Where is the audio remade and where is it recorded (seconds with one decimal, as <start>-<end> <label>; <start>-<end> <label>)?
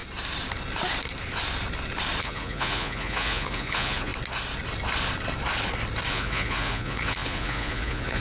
0.0-2.2 recorded; 2.2-4.1 remade; 4.1-6.1 recorded; 6.1-8.2 remade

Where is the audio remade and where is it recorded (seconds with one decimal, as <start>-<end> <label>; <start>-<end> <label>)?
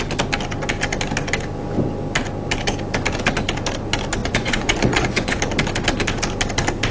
0.0-4.2 recorded; 4.2-5.4 remade; 5.4-6.9 recorded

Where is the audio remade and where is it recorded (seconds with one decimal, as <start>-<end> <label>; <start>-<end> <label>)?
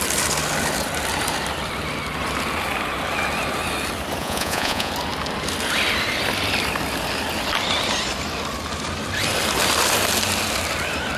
0.0-4.2 recorded; 4.2-4.9 remade; 4.9-11.2 recorded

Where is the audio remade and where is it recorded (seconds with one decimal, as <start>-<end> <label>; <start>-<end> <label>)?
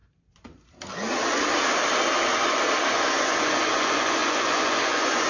0.0-2.9 recorded; 2.9-5.3 remade